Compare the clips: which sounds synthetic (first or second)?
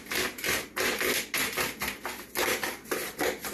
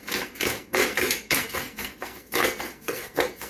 second